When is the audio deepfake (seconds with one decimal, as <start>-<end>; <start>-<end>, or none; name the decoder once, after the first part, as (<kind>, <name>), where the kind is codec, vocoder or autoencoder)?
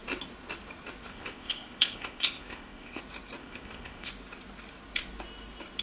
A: 1.1-3.0 (codec, ZipCodec); 3.4-4.1